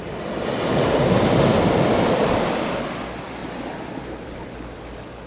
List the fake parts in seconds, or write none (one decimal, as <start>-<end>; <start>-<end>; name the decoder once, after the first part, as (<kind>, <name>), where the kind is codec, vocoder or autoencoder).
none